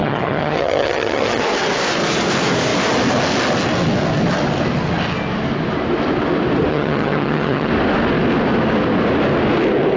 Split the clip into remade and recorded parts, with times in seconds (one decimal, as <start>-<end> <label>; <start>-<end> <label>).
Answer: 0.0-1.4 remade; 1.4-6.7 recorded; 6.7-7.7 remade; 7.7-10.0 recorded